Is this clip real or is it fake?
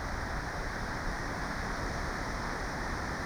fake